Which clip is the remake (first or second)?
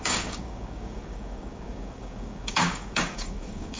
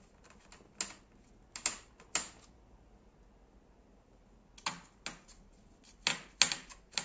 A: first